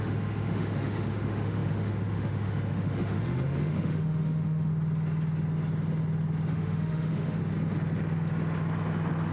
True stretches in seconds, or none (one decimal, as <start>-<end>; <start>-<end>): 4.7-6.5; 7.4-9.3